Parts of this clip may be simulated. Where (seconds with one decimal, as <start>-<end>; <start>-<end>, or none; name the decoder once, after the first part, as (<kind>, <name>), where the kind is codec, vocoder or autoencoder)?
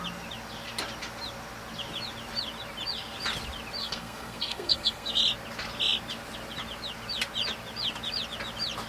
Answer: 3.8-5.2 (codec, SNAC)